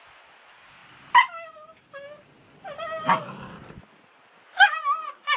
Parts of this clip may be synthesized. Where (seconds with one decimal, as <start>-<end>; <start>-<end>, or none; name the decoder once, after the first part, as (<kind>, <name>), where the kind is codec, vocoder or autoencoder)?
none

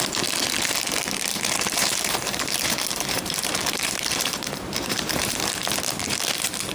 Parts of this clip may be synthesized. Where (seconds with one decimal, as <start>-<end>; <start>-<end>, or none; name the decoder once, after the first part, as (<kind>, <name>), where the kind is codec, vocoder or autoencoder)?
1.3-5.3 (vocoder, BigVGAN v2)

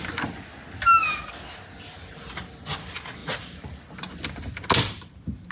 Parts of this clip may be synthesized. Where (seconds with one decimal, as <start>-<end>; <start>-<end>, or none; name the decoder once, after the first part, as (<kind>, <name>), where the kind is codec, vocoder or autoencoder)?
3.2-3.8 (vocoder, BigVGAN v2)

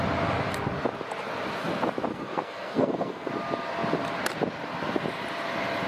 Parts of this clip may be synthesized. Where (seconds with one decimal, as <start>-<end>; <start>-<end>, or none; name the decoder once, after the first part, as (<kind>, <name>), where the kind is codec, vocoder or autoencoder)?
2.1-3.3 (codec, SNAC)

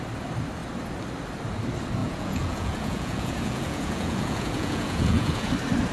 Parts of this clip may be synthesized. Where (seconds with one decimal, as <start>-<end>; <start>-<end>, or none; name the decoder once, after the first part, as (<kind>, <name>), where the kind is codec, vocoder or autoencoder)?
2.0-5.5 (vocoder, Vocos)